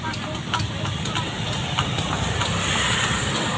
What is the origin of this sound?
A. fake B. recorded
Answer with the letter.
A